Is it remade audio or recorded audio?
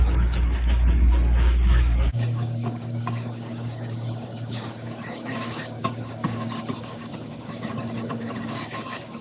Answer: remade